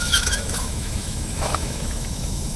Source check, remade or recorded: remade